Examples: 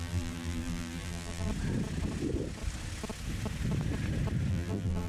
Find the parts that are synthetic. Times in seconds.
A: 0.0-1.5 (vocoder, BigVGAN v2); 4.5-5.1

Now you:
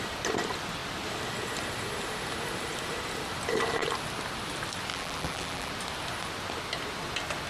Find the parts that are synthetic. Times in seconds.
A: 4.9-5.7 (vocoder, BigVGAN v2)

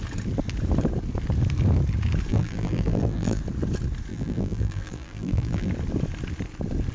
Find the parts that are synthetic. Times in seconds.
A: 2.3-3.4 (vocoder, BigVGAN v2); 4.1-5.7

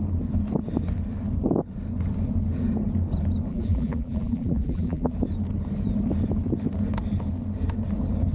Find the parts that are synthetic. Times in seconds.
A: 3.5-5.1 (vocoder, BigVGAN v2)

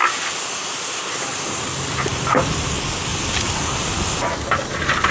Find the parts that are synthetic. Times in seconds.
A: 2.1-2.7 (vocoder, BigVGAN v2)

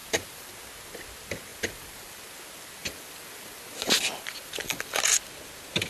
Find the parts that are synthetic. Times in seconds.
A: 0.0-0.5 (vocoder, BigVGAN v2); 1.5-2.2; 2.8-5.0

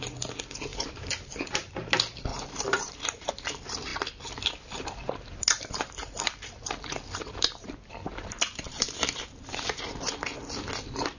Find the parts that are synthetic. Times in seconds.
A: 0.7-1.9 (vocoder, BigVGAN v2); 2.3-3.3; 6.0-10.2

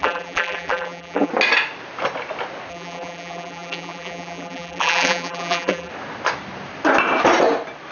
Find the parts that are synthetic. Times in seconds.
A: 0.0-1.3 (vocoder, BigVGAN v2); 2.7-5.9